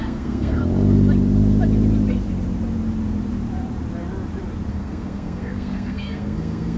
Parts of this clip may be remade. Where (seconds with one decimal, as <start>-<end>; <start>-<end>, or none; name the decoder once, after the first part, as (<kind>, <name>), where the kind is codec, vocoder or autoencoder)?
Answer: 0.0-0.6 (codec, SNAC); 4.7-6.8